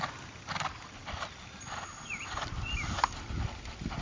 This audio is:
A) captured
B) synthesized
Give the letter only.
A